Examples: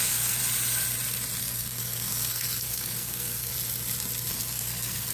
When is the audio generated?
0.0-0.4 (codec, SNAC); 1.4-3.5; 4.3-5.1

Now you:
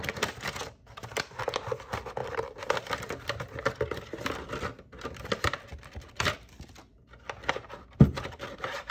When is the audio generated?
none

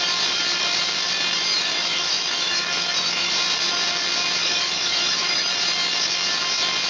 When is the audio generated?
1.5-3.3 (autoencoder, DAC-VAE); 4.4-5.5

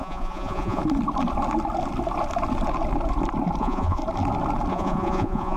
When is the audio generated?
0.0-0.8 (vocoder, Vocos); 3.6-4.0; 4.7-5.6